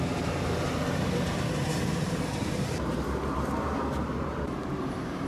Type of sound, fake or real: fake